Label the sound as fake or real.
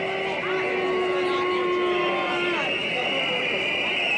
real